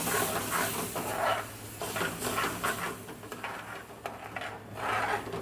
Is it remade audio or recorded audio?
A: recorded